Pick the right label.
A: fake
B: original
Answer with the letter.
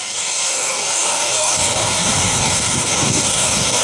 A